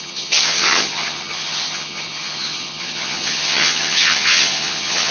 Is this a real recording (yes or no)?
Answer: no